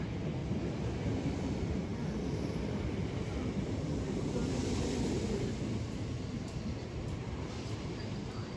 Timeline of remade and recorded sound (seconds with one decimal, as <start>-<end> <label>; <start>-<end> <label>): 0.0-0.4 remade; 0.4-1.2 recorded; 1.2-4.4 remade; 4.4-7.0 recorded; 7.0-8.6 remade